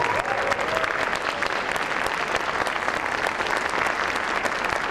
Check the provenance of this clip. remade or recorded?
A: recorded